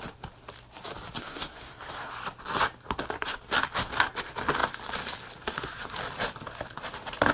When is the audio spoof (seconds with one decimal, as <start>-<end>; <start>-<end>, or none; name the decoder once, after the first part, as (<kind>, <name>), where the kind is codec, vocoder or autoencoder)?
1.2-2.1 (codec, SNAC)